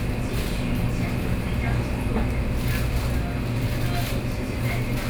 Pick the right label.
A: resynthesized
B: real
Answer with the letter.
B